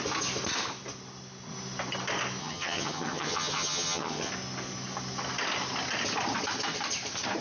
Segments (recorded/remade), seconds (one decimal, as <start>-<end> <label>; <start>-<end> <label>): 0.0-2.4 recorded; 2.4-4.3 remade; 4.3-7.4 recorded